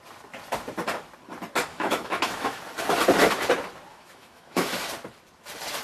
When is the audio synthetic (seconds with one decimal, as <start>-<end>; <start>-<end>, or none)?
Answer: 1.7-2.6; 3.9-4.9